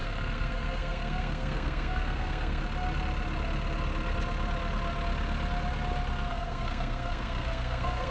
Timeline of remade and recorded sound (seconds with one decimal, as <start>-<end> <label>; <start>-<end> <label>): 0.0-2.6 remade; 2.6-6.3 recorded; 6.3-8.1 remade